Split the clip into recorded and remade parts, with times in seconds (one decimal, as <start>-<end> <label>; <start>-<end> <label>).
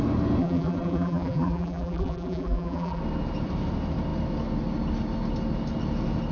0.0-0.4 recorded; 0.4-3.0 remade; 3.0-6.3 recorded